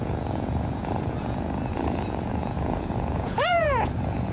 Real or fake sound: fake